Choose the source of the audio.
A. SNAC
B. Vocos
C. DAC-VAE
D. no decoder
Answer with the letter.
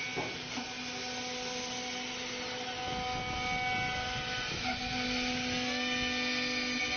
D